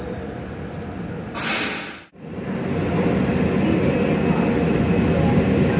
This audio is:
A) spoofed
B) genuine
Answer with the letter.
B